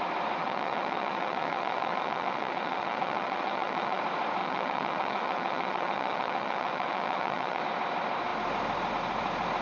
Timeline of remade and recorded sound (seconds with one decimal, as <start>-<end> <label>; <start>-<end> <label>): 0.0-0.4 recorded; 0.4-4.0 remade; 4.0-4.4 recorded; 4.4-7.6 remade; 7.6-9.6 recorded